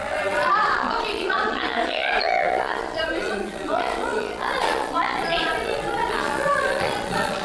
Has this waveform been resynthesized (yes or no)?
yes